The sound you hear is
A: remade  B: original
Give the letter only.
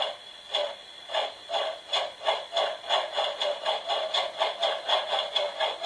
B